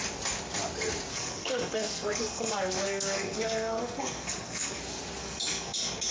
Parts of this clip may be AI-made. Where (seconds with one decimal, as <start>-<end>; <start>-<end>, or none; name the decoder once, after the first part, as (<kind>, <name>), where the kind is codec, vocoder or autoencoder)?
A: 1.1-4.8 (codec, SNAC); 5.2-6.1